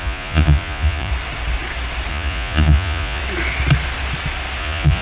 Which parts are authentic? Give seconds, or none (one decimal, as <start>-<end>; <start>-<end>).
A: 1.1-2.1; 3.2-4.6